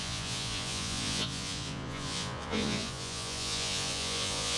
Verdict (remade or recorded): remade